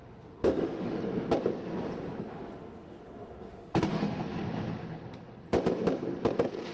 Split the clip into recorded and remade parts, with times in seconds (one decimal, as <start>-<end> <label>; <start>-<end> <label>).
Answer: 0.0-1.0 remade; 1.0-2.3 recorded; 2.3-4.2 remade; 4.2-6.7 recorded